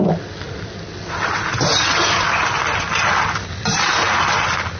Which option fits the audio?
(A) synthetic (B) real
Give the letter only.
B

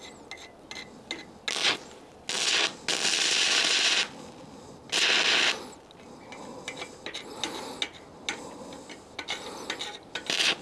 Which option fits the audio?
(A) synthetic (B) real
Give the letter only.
B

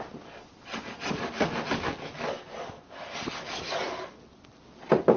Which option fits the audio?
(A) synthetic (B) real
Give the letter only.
B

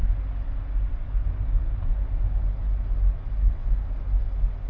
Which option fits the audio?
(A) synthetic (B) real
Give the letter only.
B